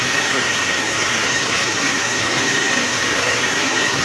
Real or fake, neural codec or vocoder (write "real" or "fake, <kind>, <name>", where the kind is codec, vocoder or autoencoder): fake, codec, SNAC